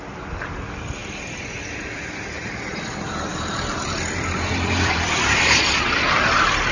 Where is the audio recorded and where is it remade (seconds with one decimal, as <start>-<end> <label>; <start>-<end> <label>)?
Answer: 0.0-1.0 recorded; 1.0-2.1 remade; 2.1-3.3 recorded; 3.3-5.6 remade; 5.6-6.7 recorded